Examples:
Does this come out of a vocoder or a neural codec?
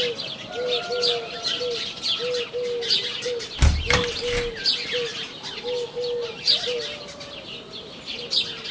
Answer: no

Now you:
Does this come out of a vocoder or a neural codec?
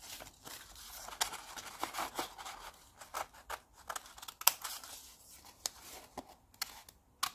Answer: no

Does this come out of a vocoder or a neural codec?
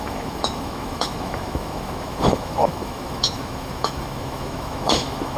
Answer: yes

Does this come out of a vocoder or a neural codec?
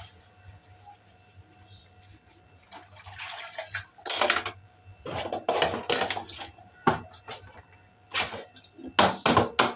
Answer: no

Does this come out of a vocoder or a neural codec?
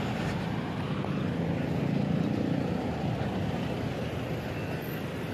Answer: no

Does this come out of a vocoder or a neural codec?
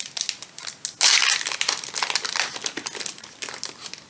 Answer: no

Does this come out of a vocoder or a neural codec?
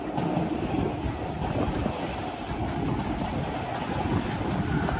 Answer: no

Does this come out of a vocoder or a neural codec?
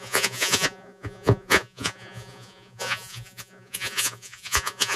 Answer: yes